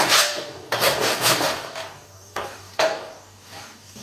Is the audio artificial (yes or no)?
yes